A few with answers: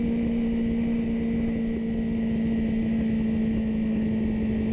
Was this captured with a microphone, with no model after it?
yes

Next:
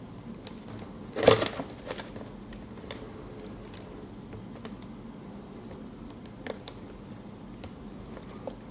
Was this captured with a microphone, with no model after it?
yes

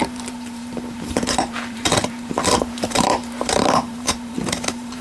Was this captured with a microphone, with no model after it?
no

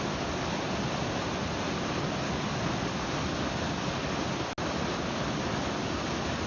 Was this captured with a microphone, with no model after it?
yes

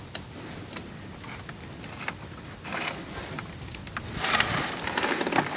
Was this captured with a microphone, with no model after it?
no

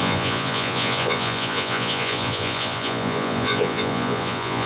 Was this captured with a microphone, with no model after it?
no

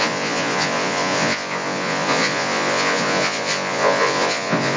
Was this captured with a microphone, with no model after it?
no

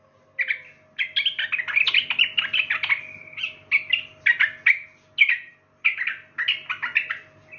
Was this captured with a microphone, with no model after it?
yes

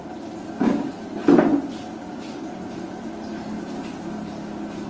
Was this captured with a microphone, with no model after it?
yes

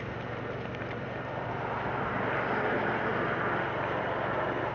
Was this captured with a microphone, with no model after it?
yes